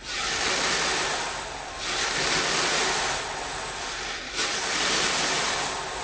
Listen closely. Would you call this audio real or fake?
real